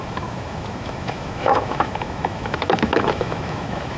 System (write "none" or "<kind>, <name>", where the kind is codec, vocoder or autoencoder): autoencoder, DAC-VAE